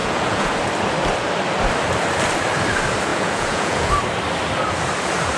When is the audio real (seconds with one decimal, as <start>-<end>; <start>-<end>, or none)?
0.5-3.1; 3.9-5.4